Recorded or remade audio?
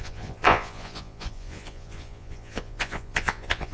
remade